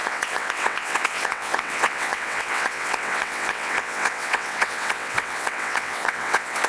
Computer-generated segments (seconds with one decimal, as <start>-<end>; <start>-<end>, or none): 0.0-6.7

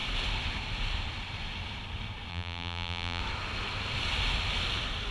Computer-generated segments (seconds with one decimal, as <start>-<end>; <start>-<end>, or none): 2.3-3.2